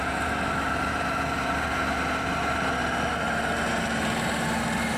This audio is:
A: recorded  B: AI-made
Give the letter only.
B